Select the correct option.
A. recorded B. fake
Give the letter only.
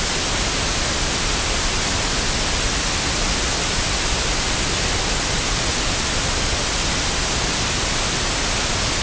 A